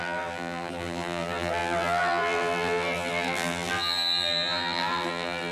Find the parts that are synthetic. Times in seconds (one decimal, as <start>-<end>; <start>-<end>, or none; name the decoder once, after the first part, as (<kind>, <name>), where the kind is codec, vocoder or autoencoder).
0.0-5.5 (vocoder, BigVGAN v2)